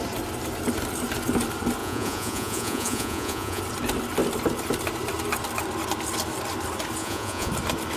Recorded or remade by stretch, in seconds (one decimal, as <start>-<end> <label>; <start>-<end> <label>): 0.0-1.8 recorded; 1.8-3.6 remade; 3.6-7.0 recorded; 7.0-7.5 remade; 7.5-8.0 recorded